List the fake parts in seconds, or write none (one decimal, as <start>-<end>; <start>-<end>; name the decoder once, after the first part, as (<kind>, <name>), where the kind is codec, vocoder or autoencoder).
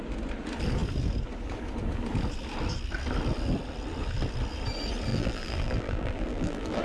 5.1-6.8 (vocoder, BigVGAN v2)